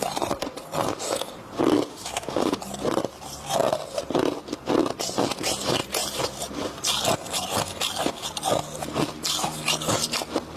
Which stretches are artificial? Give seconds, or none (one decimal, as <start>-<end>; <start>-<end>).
1.9-2.6